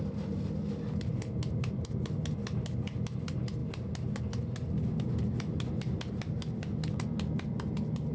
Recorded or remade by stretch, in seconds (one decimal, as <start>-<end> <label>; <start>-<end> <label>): 0.0-8.1 recorded